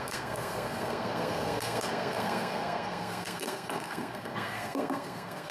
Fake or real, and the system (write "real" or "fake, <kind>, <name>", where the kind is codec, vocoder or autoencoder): fake, codec, SNAC